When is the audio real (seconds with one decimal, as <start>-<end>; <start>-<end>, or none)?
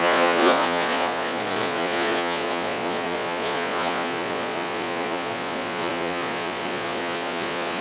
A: none